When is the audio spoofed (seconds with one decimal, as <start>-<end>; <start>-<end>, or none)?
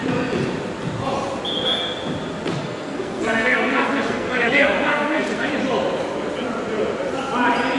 2.6-5.5